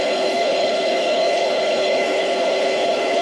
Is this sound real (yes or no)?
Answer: no